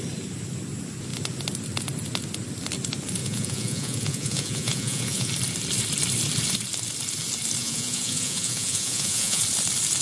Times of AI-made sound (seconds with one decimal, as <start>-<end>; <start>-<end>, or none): 3.2-5.3; 7.6-9.4